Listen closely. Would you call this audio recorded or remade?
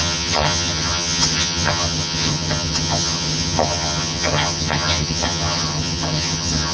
remade